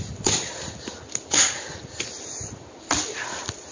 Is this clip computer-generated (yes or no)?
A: no